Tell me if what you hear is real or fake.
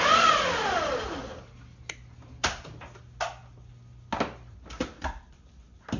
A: real